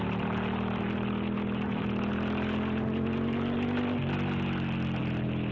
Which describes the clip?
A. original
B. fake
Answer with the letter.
A